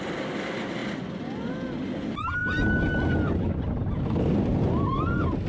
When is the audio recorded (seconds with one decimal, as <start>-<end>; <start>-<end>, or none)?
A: 0.0-5.5